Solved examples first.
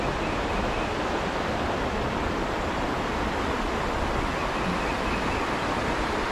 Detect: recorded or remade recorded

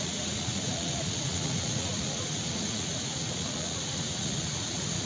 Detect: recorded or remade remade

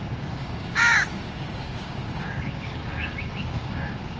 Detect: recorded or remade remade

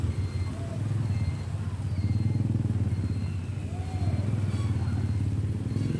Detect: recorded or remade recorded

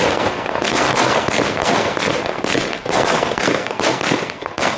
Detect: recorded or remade remade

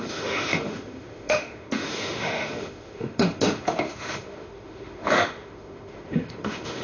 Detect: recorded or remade remade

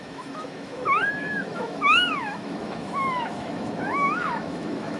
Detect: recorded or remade remade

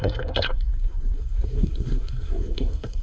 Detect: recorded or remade remade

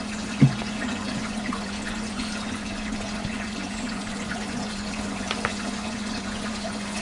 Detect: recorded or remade remade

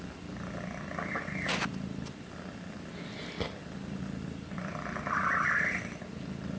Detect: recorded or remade recorded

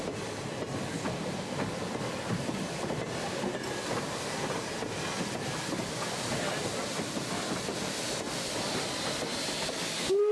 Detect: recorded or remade recorded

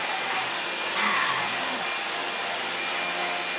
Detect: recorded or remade recorded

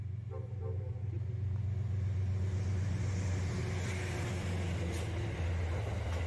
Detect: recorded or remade recorded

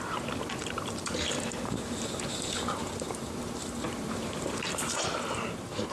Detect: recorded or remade remade